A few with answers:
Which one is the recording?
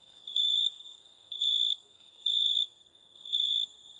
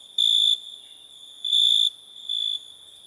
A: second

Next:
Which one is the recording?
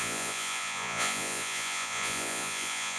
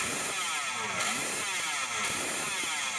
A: second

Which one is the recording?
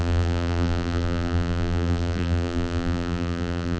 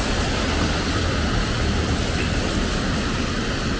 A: second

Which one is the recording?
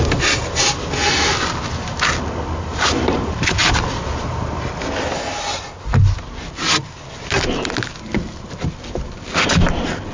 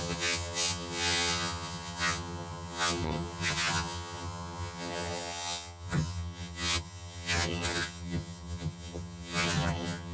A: first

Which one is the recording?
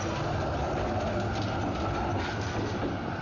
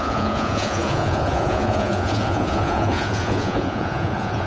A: first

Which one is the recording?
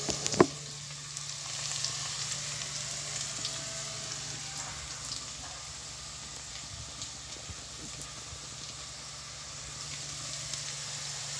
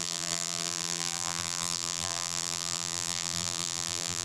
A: first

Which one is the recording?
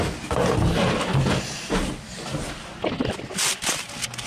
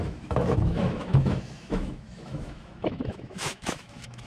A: first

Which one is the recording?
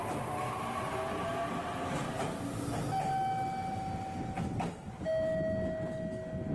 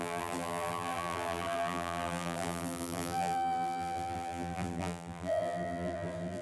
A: first